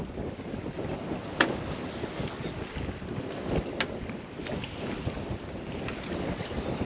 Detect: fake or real real